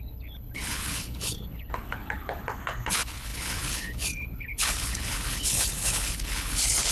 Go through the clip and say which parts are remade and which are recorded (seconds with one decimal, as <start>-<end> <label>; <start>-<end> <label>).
0.0-6.9 remade